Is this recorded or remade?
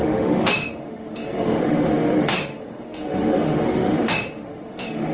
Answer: remade